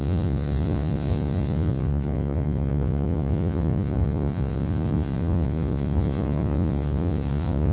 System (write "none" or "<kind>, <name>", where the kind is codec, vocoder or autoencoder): vocoder, Vocos